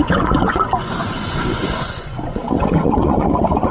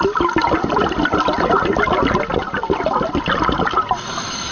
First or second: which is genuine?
second